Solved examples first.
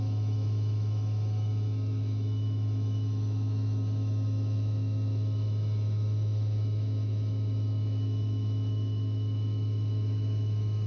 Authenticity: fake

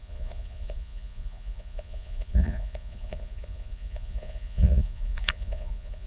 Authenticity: fake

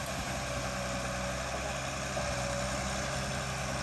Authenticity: real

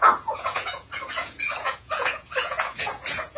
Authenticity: fake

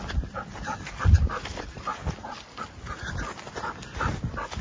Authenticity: real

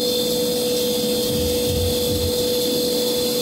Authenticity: real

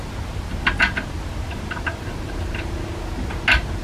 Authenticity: real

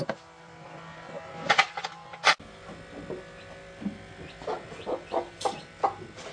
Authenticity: real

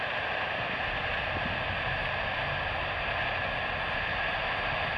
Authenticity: real